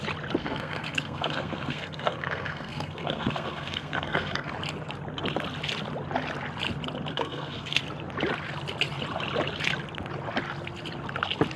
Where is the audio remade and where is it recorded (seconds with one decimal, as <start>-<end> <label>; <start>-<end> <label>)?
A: 0.0-0.4 recorded; 0.4-4.5 remade; 4.5-7.1 recorded; 7.1-7.8 remade; 7.8-11.6 recorded